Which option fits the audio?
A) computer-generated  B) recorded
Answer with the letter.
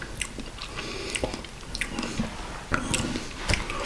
B